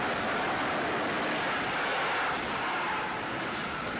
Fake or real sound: real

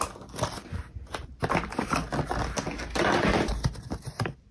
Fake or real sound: real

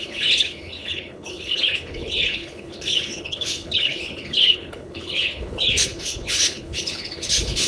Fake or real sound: fake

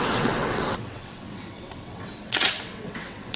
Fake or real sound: fake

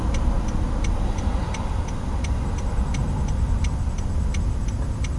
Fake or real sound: real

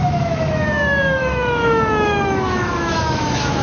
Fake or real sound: fake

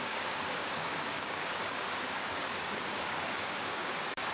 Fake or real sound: fake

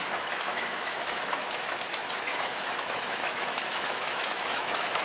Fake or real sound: fake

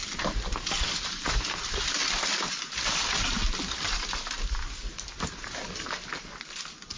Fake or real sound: real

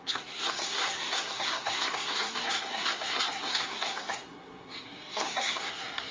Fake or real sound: fake